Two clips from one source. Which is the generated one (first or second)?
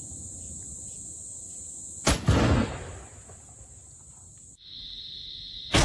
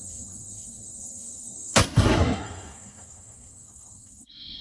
second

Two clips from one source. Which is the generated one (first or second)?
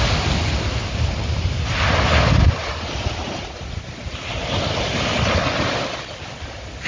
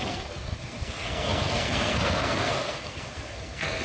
second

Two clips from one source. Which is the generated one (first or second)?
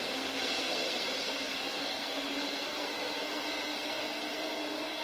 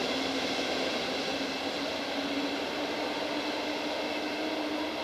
first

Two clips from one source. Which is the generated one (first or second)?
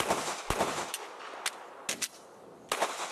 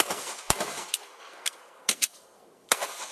second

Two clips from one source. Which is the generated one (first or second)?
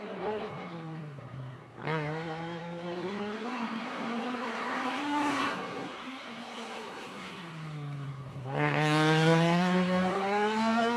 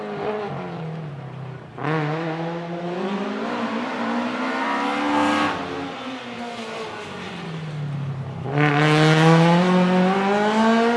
first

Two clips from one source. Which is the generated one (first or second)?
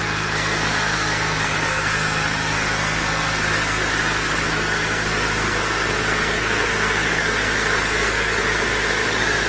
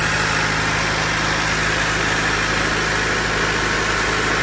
first